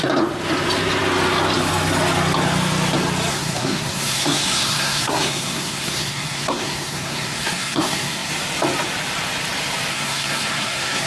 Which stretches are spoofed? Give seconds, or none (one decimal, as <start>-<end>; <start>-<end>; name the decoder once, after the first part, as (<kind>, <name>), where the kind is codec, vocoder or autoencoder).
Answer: 3.3-8.3 (codec, SNAC); 9.9-11.1

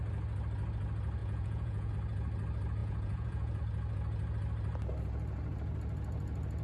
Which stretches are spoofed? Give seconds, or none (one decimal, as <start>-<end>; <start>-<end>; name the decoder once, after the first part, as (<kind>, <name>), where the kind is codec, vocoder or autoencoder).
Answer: 1.2-1.9 (vocoder, Vocos); 2.8-3.6

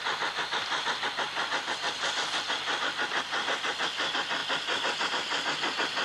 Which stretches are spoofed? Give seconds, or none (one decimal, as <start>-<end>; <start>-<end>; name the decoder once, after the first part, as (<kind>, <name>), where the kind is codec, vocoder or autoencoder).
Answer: none

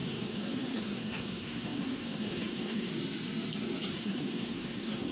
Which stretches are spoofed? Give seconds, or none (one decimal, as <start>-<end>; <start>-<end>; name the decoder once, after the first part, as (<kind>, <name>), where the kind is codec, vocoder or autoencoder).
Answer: 0.0-2.9 (codec, SNAC); 3.9-5.1

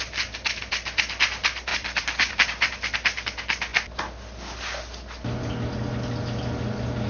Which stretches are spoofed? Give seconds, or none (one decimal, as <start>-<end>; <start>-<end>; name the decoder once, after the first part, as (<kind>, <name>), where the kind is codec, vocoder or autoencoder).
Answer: 1.7-2.3 (vocoder, BigVGAN v2)